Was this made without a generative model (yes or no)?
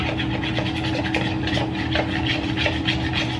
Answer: yes